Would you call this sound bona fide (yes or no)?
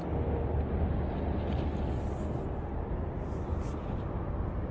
yes